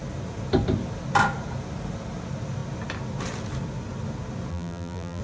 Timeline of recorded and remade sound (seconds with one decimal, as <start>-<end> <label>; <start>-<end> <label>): 0.0-4.5 recorded; 4.5-5.2 remade